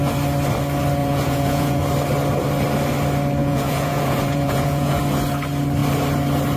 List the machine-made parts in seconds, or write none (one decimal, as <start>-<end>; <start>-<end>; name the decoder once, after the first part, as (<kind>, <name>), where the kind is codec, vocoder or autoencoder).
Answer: 1.0-1.8 (vocoder, Vocos); 3.4-5.0